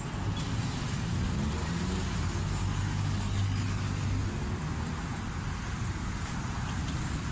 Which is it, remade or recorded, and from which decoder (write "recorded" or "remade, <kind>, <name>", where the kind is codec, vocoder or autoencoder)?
recorded